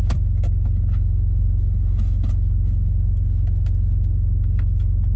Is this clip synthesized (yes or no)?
no